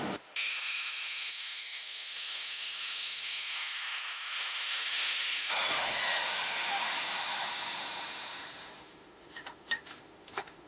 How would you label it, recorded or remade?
remade